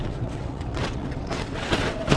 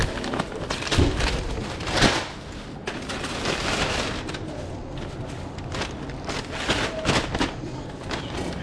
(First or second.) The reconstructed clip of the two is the first